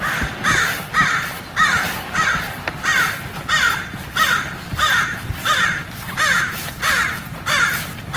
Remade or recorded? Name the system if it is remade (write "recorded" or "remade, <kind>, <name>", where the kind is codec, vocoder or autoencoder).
recorded